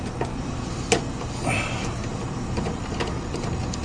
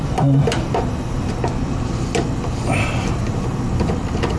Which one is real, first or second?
first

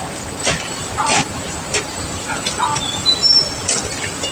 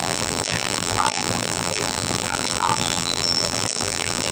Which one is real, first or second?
first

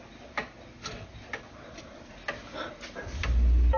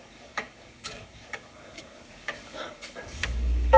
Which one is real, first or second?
first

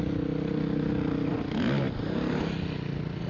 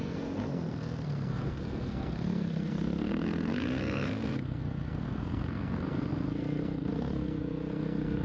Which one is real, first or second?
first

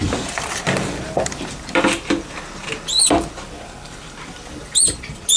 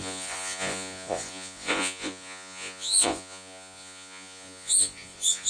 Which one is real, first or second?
first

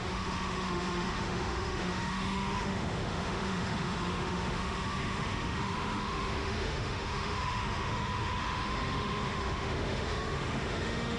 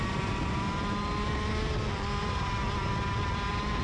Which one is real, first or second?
second